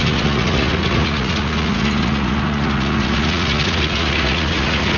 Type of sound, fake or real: fake